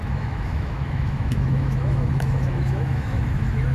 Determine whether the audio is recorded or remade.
remade